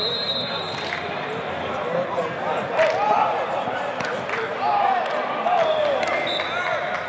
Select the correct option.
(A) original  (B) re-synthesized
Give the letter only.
A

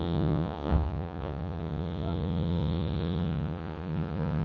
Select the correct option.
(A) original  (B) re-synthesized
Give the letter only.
B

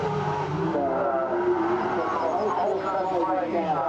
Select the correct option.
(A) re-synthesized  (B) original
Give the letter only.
B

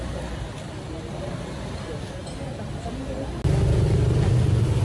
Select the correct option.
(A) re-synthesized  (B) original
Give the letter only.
B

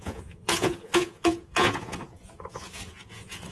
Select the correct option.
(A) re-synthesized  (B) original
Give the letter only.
A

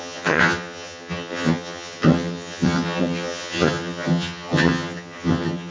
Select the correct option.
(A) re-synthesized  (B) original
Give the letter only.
A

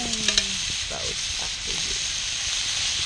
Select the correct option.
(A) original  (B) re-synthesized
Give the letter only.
A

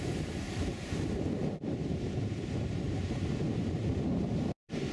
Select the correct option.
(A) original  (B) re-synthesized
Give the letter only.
B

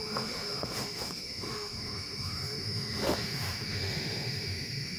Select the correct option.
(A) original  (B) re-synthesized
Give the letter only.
B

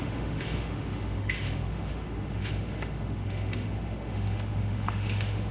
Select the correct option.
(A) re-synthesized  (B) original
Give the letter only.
A